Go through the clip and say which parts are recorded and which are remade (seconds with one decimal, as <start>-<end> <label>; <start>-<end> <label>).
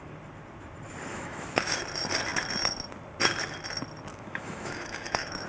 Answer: 0.0-1.1 recorded; 1.1-1.8 remade; 1.8-4.1 recorded; 4.1-5.5 remade